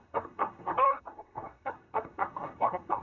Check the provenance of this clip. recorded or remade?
remade